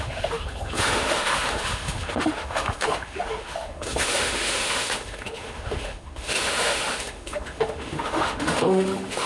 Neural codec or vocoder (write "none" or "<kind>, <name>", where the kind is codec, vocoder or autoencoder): autoencoder, DAC-VAE